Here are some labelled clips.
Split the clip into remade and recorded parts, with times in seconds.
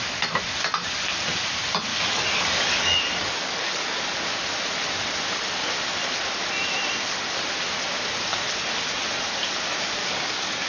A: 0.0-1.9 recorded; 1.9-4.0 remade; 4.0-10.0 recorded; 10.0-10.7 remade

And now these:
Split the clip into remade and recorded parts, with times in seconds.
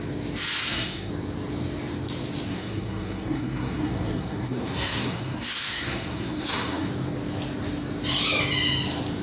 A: 0.0-0.6 recorded; 0.6-1.1 remade; 1.1-2.5 recorded; 2.5-6.9 remade; 6.9-9.2 recorded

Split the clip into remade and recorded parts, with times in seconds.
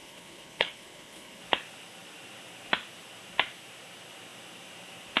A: 0.0-1.4 remade; 1.4-5.2 recorded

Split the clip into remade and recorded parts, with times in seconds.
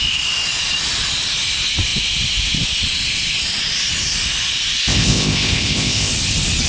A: 0.0-4.8 recorded; 4.8-6.1 remade; 6.1-6.7 recorded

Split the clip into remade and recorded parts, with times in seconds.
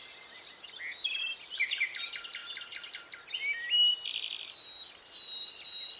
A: 0.0-6.0 recorded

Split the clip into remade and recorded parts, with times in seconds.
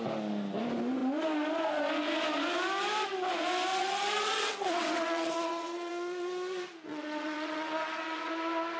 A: 0.0-3.7 recorded; 3.7-5.9 remade; 5.9-6.9 recorded; 6.9-8.3 remade; 8.3-8.8 recorded